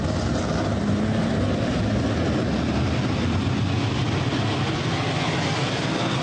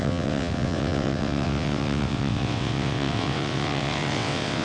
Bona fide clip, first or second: first